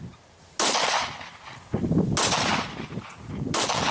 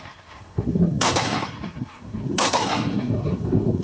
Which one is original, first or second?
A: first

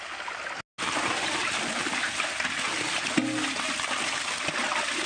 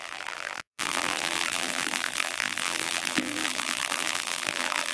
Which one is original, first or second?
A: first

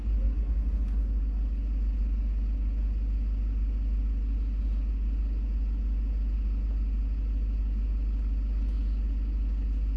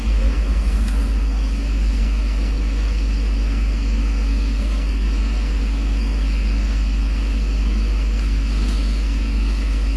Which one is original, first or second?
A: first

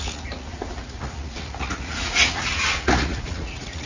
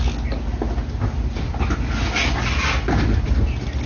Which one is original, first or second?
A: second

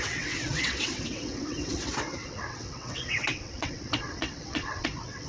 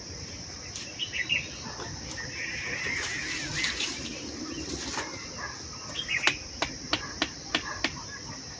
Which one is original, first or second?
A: second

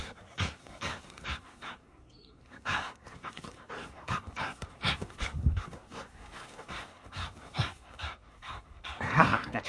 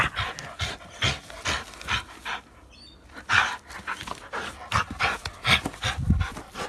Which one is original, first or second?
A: second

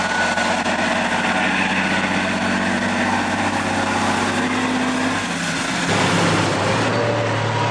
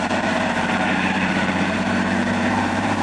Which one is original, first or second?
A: first